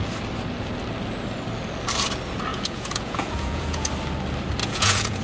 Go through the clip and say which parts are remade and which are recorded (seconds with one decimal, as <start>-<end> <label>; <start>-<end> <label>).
0.0-2.5 recorded; 2.5-3.9 remade; 3.9-4.6 recorded; 4.6-5.2 remade